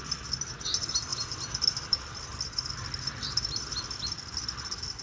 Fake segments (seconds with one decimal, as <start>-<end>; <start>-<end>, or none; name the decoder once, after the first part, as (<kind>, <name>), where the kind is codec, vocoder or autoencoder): none